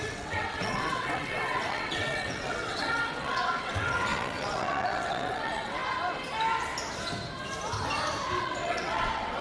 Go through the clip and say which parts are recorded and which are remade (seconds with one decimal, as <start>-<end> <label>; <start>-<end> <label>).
0.0-5.8 remade; 5.8-8.4 recorded; 8.4-9.4 remade